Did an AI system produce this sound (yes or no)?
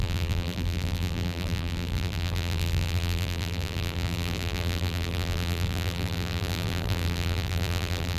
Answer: yes